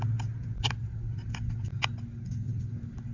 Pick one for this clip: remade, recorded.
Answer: recorded